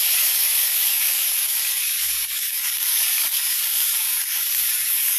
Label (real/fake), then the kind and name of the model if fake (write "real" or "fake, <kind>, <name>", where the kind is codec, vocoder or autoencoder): fake, codec, DAC